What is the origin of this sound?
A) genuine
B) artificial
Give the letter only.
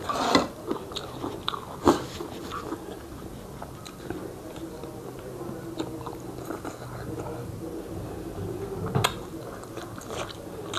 A